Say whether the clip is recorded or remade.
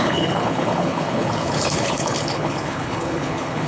remade